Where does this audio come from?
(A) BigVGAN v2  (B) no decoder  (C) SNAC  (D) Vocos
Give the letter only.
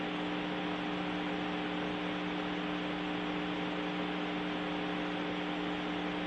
B